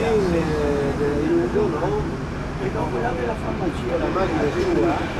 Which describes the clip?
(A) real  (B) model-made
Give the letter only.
A